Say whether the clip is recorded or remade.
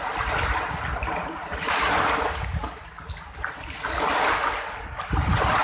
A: recorded